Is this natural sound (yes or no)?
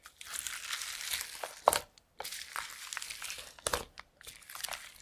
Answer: yes